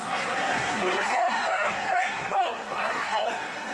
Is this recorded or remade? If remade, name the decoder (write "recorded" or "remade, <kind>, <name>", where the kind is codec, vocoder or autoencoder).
remade, codec, SNAC